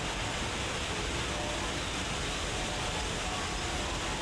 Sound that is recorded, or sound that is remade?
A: recorded